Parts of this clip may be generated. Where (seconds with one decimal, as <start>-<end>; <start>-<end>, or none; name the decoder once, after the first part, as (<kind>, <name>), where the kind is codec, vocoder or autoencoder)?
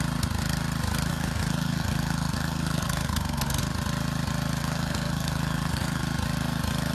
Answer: 1.1-3.6 (codec, SNAC); 4.6-6.0